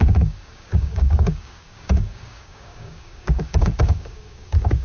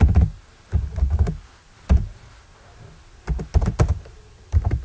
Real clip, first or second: second